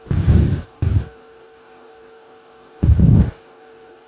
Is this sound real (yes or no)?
no